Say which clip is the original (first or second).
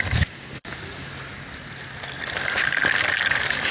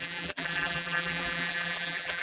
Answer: first